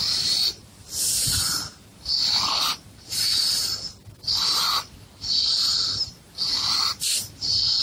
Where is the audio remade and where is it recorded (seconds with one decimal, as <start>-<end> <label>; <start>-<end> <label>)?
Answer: 0.0-7.8 recorded